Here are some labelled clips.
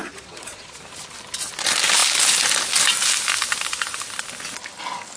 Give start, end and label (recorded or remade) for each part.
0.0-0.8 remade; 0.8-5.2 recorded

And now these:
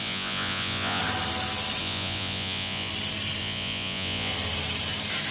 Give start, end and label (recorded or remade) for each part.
0.0-1.0 remade; 1.0-1.8 recorded; 1.8-2.9 remade; 2.9-3.4 recorded; 3.4-4.3 remade; 4.3-5.3 recorded

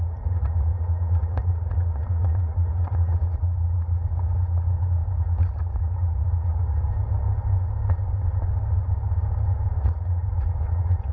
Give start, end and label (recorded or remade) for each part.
0.0-6.9 remade; 6.9-9.8 recorded; 9.8-11.1 remade